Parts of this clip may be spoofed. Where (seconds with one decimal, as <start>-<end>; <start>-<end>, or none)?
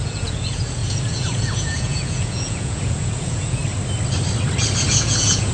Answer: 0.0-3.6; 4.9-5.5